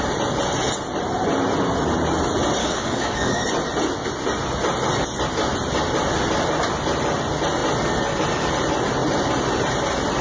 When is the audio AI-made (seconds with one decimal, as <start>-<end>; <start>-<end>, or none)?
2.6-3.4